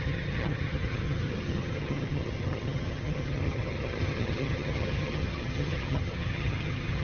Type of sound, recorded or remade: remade